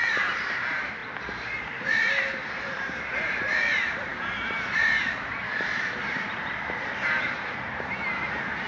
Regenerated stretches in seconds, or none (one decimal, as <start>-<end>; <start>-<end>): 0.0-1.0; 1.6-8.7